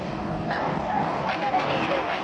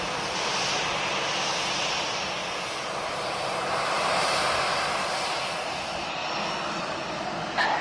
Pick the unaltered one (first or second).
second